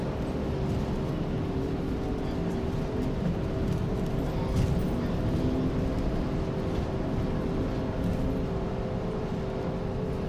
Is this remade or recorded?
recorded